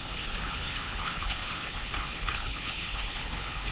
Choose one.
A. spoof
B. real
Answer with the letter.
A